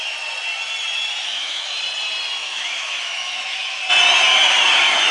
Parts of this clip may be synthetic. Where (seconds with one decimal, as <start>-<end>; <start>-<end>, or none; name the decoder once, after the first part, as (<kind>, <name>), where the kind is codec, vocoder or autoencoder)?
1.2-1.8 (autoencoder, DAC-VAE); 2.4-3.8